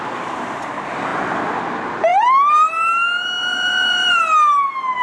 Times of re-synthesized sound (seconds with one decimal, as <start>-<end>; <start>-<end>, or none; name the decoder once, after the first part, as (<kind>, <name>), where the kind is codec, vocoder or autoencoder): 2.1-2.7 (vocoder, BigVGAN v2); 3.4-4.2